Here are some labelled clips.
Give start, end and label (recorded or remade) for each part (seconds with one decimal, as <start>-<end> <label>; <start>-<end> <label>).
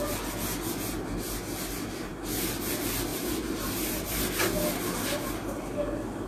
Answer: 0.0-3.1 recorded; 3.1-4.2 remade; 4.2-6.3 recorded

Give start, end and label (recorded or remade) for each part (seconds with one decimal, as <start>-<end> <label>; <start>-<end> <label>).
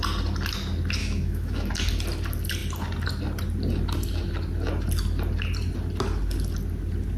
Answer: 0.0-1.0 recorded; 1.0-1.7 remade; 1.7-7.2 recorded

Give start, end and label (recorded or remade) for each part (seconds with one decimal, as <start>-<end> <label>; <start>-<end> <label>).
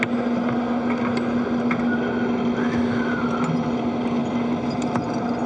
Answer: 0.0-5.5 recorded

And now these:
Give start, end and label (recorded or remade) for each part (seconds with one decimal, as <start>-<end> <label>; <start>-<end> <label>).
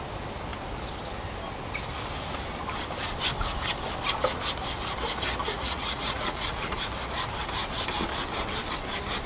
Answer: 0.0-5.4 recorded; 5.4-6.8 remade; 6.8-9.3 recorded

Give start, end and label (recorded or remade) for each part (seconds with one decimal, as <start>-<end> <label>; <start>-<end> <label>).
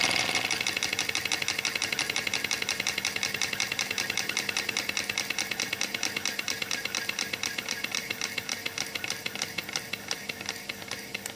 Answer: 0.0-11.4 recorded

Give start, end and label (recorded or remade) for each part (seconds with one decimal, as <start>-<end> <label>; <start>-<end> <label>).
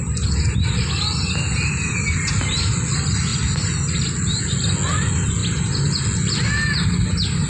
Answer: 0.0-7.5 recorded